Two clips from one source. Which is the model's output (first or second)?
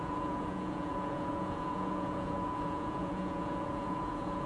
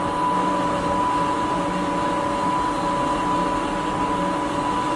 first